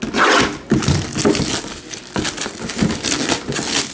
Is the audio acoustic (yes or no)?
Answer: yes